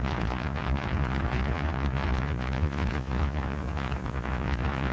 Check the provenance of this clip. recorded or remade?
remade